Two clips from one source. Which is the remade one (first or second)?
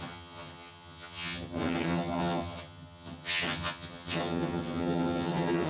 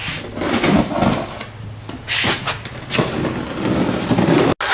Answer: first